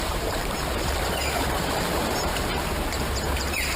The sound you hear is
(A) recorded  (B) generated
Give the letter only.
B